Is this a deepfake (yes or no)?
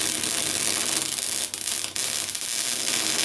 no